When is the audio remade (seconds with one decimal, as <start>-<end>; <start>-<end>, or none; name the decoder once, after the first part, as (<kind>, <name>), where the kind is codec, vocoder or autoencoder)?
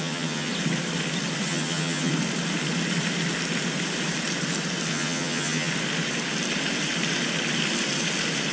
0.0-0.5 (vocoder, HiFi-GAN); 1.5-2.1; 4.9-5.7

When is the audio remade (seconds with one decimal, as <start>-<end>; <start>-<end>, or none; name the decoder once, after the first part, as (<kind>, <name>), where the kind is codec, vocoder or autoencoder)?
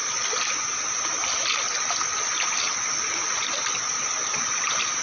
none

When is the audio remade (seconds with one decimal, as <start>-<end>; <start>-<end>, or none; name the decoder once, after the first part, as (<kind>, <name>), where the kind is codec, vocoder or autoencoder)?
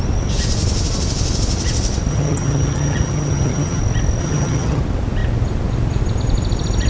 2.1-3.8 (vocoder, HiFi-GAN); 4.2-4.8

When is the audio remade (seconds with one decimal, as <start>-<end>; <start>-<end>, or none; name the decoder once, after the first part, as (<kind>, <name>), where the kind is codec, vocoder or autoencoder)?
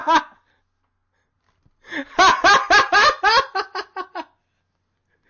none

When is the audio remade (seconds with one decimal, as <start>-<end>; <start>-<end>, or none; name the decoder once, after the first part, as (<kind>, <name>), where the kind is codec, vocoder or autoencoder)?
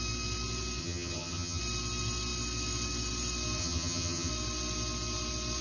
0.8-1.6 (vocoder, HiFi-GAN); 3.6-4.3